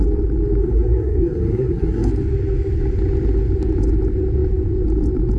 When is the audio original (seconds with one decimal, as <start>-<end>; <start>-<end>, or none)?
0.0-0.6; 2.1-5.4